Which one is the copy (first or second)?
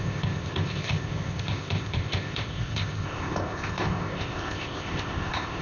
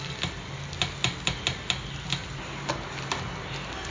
first